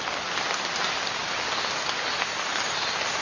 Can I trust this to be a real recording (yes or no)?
yes